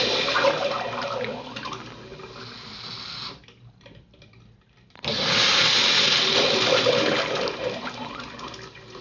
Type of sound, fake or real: real